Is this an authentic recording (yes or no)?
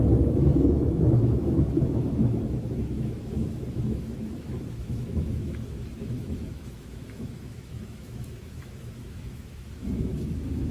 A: no